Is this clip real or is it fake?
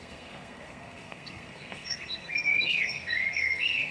fake